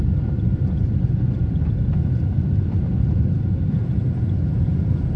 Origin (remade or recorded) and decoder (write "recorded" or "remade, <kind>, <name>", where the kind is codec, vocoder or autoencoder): remade, vocoder, BigVGAN v2